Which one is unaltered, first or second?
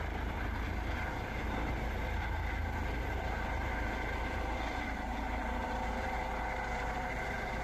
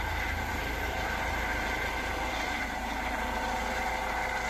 second